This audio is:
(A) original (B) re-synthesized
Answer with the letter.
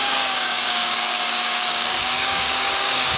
B